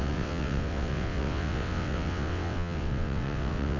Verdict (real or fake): fake